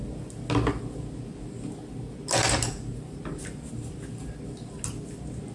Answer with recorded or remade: recorded